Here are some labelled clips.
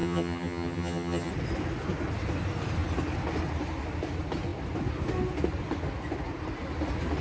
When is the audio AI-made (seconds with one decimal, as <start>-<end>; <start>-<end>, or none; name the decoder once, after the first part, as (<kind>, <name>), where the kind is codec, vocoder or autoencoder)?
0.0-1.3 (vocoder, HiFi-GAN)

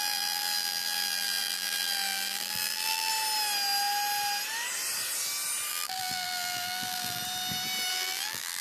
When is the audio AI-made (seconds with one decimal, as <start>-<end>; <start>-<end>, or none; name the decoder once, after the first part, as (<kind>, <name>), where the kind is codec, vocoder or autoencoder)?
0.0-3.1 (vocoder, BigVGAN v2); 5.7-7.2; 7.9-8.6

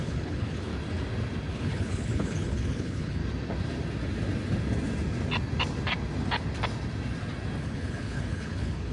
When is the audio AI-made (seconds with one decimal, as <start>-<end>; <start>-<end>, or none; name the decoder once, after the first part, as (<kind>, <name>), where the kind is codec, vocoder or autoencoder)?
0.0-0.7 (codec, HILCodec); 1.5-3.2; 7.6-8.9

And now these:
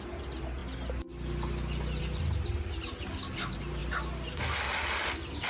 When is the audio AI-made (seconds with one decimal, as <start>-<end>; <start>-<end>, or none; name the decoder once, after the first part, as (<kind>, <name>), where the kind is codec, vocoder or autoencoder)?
none

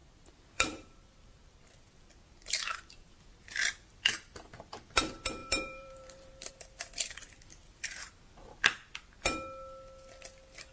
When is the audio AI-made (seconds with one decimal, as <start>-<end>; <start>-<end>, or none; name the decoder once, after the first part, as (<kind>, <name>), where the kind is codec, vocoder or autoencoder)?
0.0-2.1 (vocoder, BigVGAN v2); 5.4-6.5

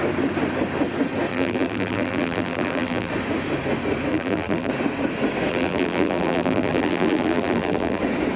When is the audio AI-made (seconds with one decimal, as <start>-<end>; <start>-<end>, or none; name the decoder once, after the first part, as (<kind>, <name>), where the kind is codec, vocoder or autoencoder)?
1.3-3.1 (vocoder, BigVGAN v2); 4.1-4.7; 5.5-8.0

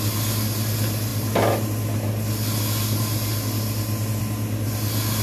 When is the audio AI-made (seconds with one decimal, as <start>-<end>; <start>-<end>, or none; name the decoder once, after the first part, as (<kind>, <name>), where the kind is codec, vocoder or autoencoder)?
none